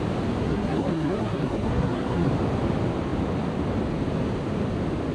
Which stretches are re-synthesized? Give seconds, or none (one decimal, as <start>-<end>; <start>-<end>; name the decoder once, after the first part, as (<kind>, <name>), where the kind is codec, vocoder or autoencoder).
0.4-2.3 (codec, SNAC)